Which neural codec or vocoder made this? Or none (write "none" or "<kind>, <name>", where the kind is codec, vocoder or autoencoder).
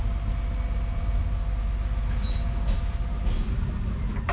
none